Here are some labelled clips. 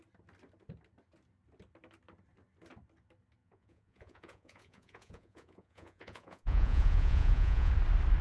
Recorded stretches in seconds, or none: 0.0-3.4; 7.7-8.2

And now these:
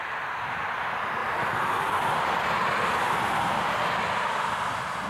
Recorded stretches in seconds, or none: 0.0-5.1

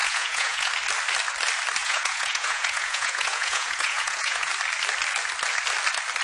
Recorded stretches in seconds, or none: 0.7-1.8; 4.5-6.2

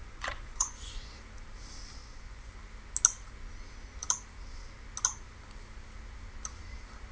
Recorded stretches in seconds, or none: 1.2-2.0; 2.5-7.1